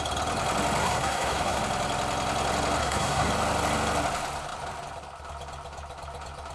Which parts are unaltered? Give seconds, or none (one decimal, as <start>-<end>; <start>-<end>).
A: 0.0-0.8; 1.6-2.8; 3.3-6.5